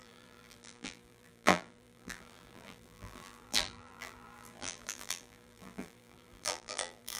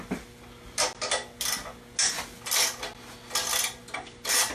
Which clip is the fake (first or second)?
first